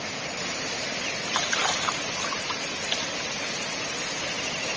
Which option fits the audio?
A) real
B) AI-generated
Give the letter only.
A